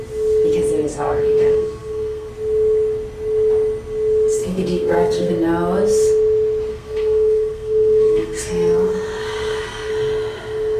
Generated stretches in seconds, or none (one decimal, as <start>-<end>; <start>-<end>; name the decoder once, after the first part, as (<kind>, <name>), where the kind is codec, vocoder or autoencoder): 0.9-2.3 (codec, SNAC); 4.4-5.3; 6.7-9.9